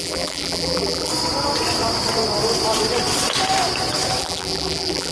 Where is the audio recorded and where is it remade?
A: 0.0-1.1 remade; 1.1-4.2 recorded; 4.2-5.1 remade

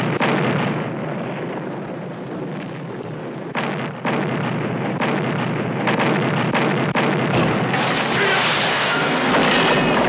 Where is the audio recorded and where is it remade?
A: 0.0-8.7 recorded; 8.7-9.3 remade; 9.3-10.1 recorded

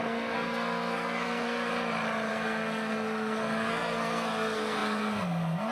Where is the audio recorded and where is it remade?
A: 0.0-1.7 remade; 1.7-2.3 recorded; 2.3-5.7 remade

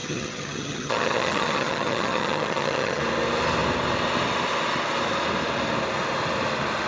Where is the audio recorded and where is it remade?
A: 0.0-3.0 remade; 3.0-6.9 recorded

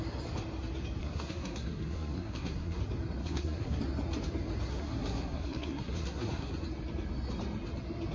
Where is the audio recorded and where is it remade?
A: 0.0-1.0 recorded; 1.0-2.8 remade; 2.8-3.2 recorded; 3.2-3.8 remade; 3.8-4.7 recorded; 4.7-6.5 remade; 6.5-8.1 recorded